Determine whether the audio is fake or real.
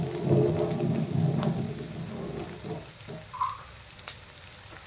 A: real